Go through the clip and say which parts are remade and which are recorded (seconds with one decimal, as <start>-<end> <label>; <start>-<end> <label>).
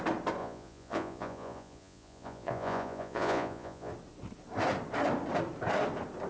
0.0-0.4 recorded; 0.4-3.9 remade; 3.9-6.3 recorded